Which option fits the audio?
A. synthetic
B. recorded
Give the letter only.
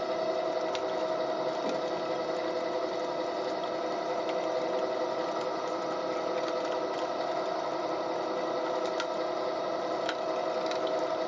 B